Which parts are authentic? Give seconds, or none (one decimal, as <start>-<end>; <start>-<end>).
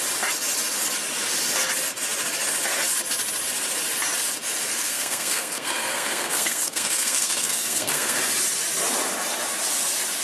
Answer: 0.0-4.7; 8.2-10.2